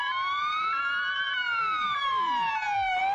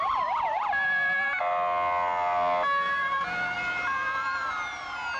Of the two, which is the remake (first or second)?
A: first